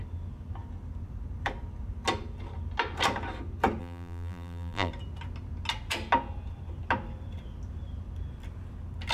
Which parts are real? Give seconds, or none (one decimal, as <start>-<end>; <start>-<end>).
0.0-3.8; 4.9-9.1